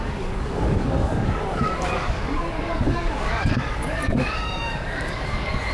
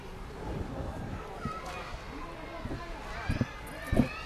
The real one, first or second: second